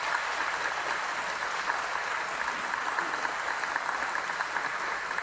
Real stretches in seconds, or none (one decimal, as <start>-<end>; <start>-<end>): 0.0-5.2